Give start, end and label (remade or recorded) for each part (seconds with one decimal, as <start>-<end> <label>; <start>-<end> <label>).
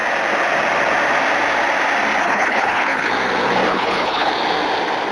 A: 0.0-2.2 recorded; 2.2-3.1 remade; 3.1-3.7 recorded; 3.7-4.3 remade; 4.3-5.1 recorded